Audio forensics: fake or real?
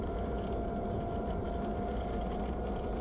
real